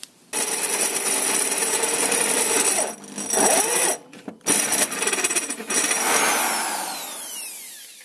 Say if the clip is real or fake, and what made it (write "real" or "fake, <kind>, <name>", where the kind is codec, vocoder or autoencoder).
real